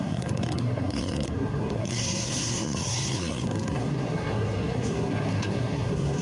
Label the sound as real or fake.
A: fake